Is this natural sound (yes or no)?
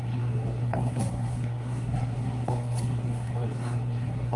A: no